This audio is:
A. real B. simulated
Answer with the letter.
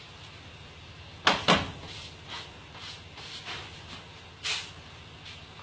A